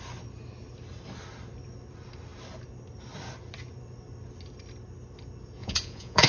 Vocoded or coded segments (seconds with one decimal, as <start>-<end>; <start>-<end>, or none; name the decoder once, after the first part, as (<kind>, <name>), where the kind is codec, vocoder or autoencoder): 5.6-6.3 (vocoder, Vocos)